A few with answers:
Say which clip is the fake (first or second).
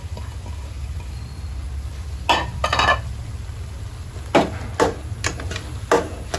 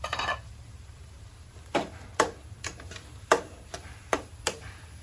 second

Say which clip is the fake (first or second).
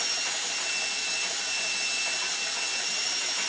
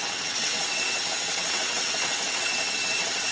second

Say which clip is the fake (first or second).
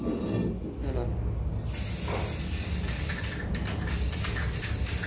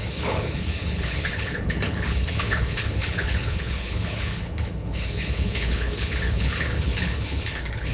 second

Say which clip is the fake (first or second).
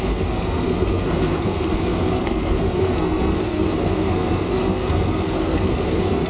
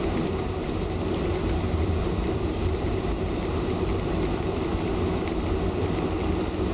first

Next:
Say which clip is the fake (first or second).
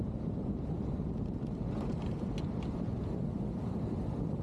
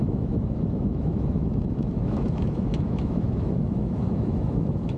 second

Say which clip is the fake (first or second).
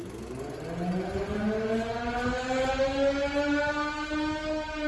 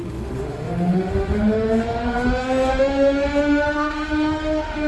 second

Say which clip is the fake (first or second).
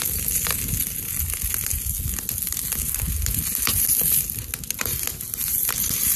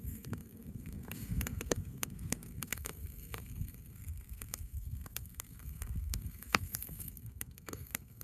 second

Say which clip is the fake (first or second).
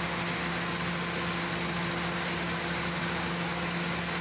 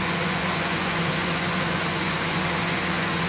second